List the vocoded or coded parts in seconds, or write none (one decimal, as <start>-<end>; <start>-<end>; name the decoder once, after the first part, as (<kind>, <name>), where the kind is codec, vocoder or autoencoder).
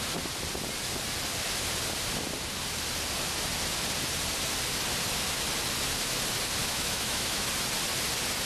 6.6-7.5 (autoencoder, DAC-VAE)